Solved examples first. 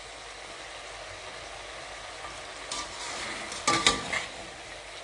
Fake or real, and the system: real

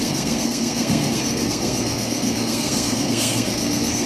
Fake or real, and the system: fake, codec, SNAC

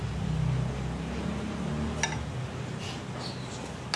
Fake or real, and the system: real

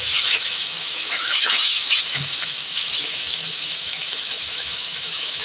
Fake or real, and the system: fake, autoencoder, DAC-VAE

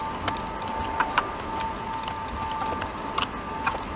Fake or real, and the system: real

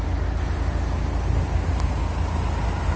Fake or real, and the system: real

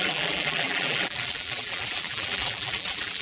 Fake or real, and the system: fake, vocoder, BigVGAN v2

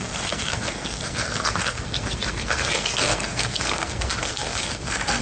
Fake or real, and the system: fake, codec, SNAC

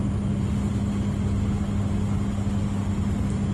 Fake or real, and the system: real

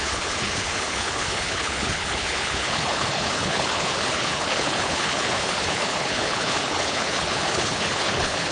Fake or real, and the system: fake, codec, HILCodec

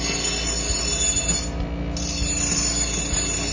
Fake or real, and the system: real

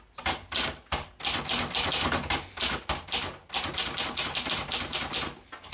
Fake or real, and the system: real